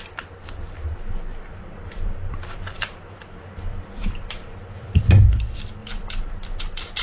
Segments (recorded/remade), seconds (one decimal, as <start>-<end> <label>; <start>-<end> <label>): 0.0-1.3 recorded; 1.3-5.0 remade; 5.0-5.8 recorded; 5.8-6.3 remade; 6.3-7.0 recorded

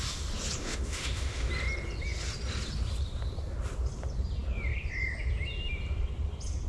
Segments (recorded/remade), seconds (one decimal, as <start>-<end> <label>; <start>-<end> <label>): 0.0-0.6 recorded; 0.6-1.5 remade; 1.5-6.7 recorded